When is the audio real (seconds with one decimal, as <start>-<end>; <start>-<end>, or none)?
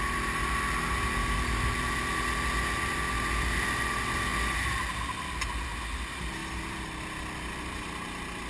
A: 0.0-8.5